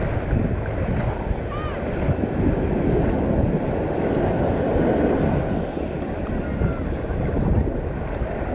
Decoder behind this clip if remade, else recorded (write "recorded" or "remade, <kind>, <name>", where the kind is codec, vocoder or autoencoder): recorded